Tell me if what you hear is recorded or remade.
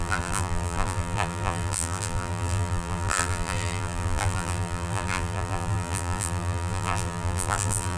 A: remade